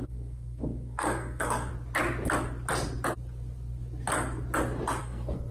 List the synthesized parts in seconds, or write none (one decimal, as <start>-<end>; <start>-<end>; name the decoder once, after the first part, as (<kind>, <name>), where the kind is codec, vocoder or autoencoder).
0.0-1.7 (codec, SNAC); 5.0-5.5